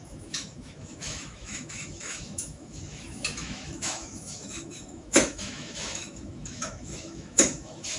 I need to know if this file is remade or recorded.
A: remade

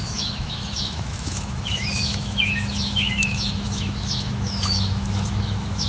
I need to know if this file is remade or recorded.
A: remade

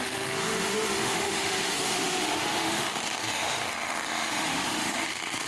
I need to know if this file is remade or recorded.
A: remade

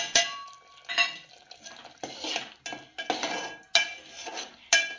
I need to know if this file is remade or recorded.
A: recorded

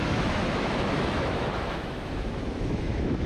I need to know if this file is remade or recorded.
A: remade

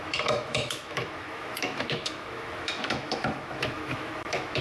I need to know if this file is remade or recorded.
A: remade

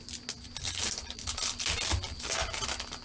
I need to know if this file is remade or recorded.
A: recorded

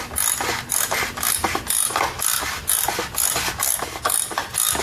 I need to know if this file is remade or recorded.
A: recorded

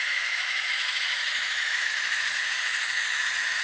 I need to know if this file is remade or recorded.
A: remade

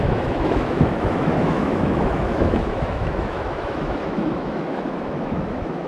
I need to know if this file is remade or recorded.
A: remade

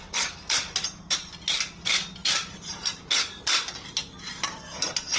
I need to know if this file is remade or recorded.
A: recorded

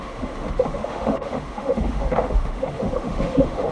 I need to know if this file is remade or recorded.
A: remade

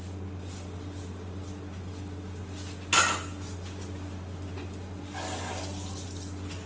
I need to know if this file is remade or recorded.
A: recorded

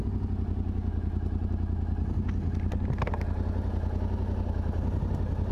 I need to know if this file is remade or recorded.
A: recorded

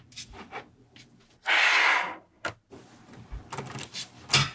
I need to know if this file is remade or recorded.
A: recorded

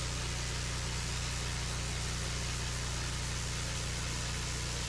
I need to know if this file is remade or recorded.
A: recorded